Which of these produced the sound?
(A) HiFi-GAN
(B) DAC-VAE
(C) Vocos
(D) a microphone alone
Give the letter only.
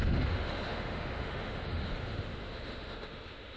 B